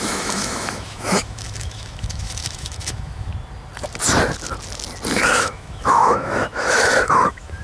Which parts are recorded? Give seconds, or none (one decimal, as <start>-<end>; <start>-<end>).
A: 3.3-5.4